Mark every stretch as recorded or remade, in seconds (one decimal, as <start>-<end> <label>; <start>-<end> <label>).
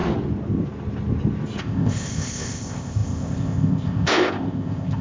0.0-1.6 recorded; 1.6-5.0 remade